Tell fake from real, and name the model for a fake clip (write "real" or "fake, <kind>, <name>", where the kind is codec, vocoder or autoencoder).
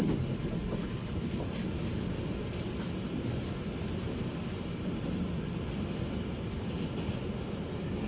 real